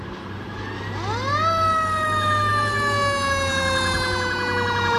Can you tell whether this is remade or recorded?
recorded